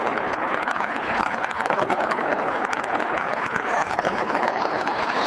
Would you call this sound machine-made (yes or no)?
yes